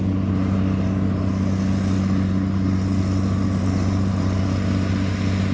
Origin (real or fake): real